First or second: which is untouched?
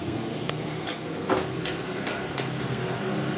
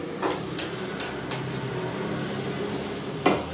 second